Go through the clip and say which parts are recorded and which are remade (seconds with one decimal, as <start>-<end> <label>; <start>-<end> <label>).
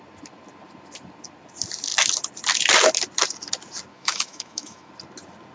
0.0-3.9 recorded; 3.9-4.9 remade; 4.9-5.5 recorded